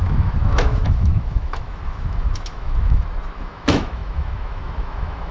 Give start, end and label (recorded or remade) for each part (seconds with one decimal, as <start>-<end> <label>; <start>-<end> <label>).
0.0-5.3 remade